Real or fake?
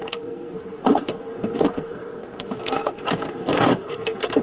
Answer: fake